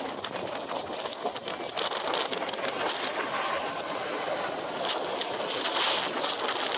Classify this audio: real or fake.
real